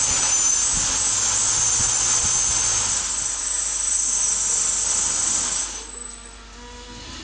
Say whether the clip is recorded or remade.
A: recorded